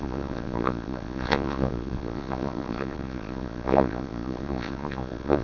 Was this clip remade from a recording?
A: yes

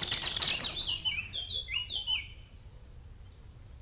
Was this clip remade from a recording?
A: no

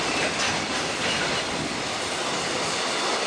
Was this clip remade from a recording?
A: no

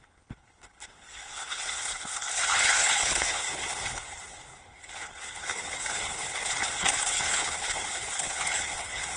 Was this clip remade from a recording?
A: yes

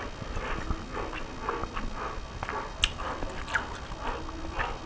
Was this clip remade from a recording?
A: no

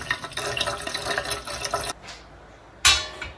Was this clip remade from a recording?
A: no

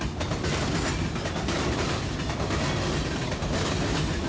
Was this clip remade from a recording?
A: no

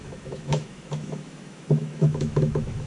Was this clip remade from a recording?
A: yes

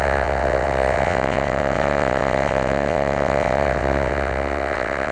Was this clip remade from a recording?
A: yes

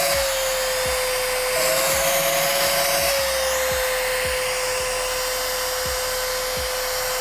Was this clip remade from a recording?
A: no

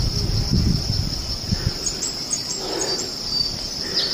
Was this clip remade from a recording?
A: no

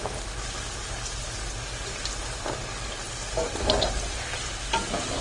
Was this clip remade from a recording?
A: no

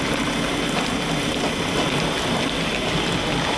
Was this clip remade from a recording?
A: no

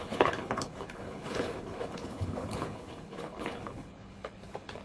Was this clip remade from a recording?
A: yes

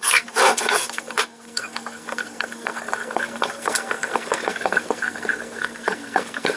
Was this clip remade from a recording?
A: yes